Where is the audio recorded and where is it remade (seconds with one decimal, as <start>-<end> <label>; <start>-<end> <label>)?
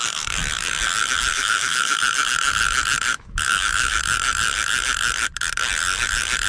0.0-1.3 recorded; 1.3-2.0 remade; 2.0-3.1 recorded; 3.1-4.0 remade; 4.0-6.5 recorded